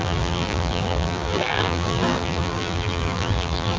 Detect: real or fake fake